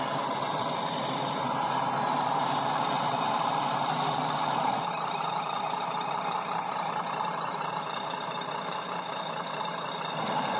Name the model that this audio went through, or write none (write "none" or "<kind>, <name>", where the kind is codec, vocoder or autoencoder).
vocoder, BigVGAN v2